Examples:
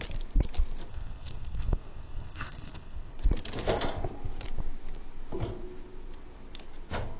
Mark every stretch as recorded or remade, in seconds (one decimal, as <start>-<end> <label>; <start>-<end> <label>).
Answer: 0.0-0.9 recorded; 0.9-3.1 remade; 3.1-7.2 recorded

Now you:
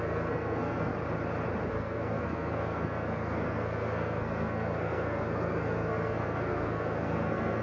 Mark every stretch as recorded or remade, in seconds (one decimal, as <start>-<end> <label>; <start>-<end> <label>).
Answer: 0.0-0.9 remade; 0.9-1.7 recorded; 1.7-7.6 remade

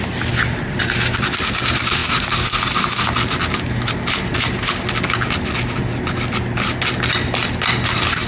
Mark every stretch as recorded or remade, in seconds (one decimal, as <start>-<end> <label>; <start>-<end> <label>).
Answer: 0.0-8.3 recorded

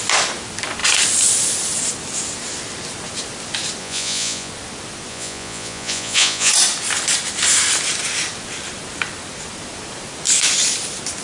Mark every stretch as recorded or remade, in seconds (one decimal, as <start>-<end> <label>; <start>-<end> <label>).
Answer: 0.0-3.8 recorded; 3.8-4.5 remade; 4.5-5.1 recorded; 5.1-6.5 remade; 6.5-11.2 recorded

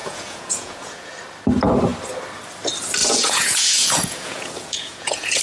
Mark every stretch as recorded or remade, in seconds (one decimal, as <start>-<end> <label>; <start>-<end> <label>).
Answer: 0.0-1.1 remade; 1.1-3.0 recorded; 3.0-5.4 remade

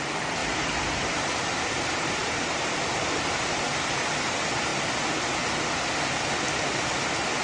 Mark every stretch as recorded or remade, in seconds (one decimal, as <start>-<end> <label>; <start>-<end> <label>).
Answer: 0.0-7.4 recorded

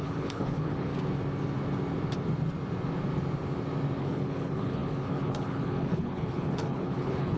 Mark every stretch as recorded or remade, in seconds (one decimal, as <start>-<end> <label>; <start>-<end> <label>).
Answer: 0.0-0.9 remade; 0.9-4.0 recorded; 4.0-7.4 remade

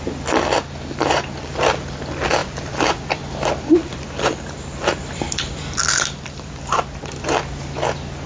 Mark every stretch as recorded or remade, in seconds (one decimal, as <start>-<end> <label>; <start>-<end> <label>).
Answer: 0.0-2.4 recorded; 2.4-7.4 remade; 7.4-8.3 recorded